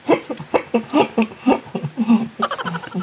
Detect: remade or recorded remade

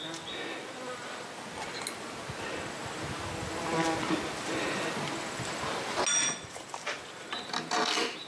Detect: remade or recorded recorded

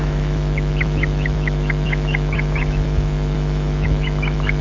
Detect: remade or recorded remade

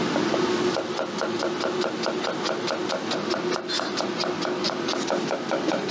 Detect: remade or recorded recorded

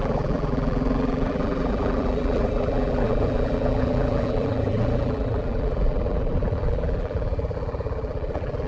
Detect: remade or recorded remade